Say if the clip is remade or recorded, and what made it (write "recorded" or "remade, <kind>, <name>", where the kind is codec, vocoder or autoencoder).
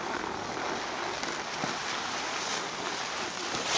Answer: recorded